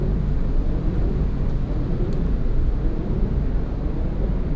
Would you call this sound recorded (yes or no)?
yes